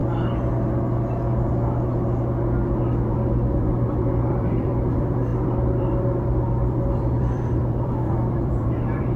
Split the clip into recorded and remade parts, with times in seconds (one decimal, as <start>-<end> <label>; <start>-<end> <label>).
0.0-3.1 recorded; 3.1-9.2 remade